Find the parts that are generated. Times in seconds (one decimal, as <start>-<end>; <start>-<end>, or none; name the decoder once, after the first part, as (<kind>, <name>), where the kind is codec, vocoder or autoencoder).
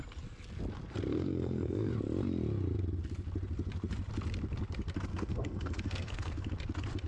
1.1-1.9 (codec, SNAC); 5.1-6.5